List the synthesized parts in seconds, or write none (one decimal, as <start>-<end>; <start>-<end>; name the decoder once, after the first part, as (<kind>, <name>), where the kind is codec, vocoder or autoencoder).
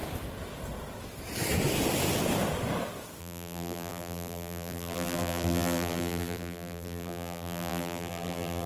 3.2-8.7 (vocoder, BigVGAN v2)